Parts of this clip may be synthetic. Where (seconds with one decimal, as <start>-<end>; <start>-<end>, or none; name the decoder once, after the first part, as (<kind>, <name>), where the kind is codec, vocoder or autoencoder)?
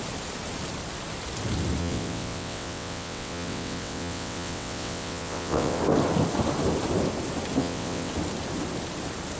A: 1.8-5.8 (vocoder, WaveNeXt); 7.6-8.1